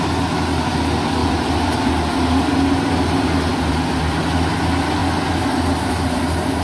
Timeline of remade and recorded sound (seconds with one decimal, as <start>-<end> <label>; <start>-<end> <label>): 0.0-1.2 recorded; 1.2-1.9 remade; 1.9-3.5 recorded; 3.5-4.2 remade; 4.2-6.6 recorded